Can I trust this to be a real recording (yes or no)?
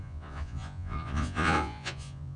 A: no